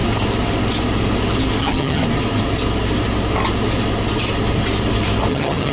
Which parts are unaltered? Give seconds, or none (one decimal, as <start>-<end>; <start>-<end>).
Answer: 0.0-1.6; 2.0-5.3